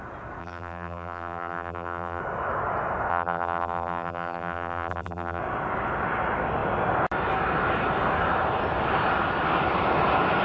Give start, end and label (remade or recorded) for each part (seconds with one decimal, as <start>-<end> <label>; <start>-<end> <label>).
0.0-0.4 recorded; 0.4-2.2 remade; 2.2-3.1 recorded; 3.1-5.4 remade; 5.4-10.4 recorded